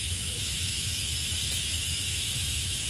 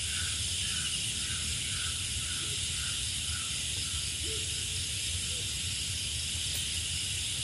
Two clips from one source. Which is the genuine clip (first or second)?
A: second